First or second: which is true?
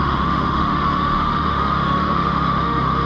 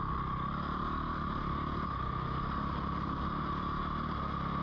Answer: second